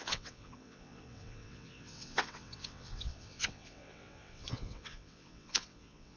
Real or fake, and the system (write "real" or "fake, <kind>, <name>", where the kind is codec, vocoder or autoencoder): fake, vocoder, WaveNeXt